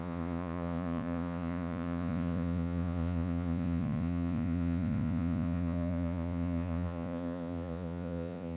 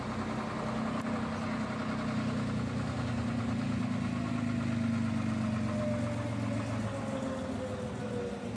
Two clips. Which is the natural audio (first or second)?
second